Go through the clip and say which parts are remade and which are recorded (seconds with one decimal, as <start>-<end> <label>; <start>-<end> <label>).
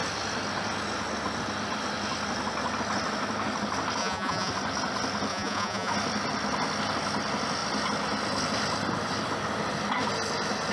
0.0-4.0 recorded; 4.0-4.5 remade; 4.5-5.3 recorded; 5.3-5.9 remade; 5.9-10.7 recorded